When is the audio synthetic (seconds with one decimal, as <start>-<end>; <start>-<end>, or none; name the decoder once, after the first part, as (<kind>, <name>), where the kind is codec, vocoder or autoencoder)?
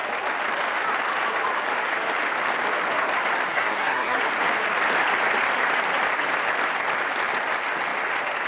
3.5-4.2 (codec, SNAC)